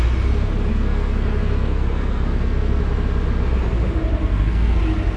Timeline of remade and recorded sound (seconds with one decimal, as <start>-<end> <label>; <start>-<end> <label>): 0.0-0.7 recorded; 0.7-2.8 remade; 2.8-4.2 recorded; 4.2-4.8 remade; 4.8-5.2 recorded